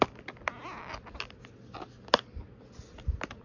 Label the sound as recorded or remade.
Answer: recorded